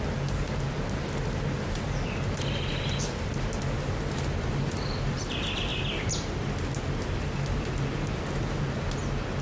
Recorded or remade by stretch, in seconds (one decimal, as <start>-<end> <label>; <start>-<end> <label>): 0.0-9.4 recorded